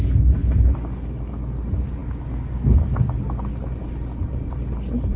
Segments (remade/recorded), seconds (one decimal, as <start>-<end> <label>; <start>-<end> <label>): 0.0-5.2 recorded